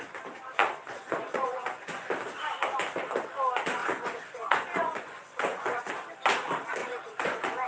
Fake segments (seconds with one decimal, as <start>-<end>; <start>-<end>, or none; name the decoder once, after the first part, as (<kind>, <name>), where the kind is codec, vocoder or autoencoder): 0.6-2.1 (vocoder, Vocos); 3.8-5.9; 6.8-7.7